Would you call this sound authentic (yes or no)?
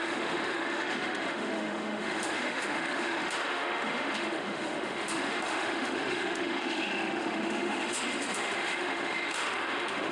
no